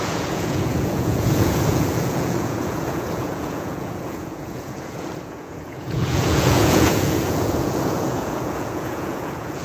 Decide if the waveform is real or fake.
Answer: fake